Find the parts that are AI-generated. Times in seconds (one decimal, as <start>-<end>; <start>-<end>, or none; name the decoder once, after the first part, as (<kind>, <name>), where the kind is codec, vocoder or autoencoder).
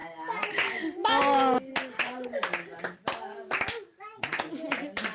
none